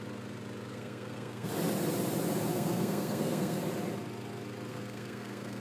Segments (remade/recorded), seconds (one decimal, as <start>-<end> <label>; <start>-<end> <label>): 0.0-0.7 recorded; 0.7-1.5 remade; 1.5-2.5 recorded; 2.5-3.6 remade; 3.6-4.7 recorded; 4.7-5.6 remade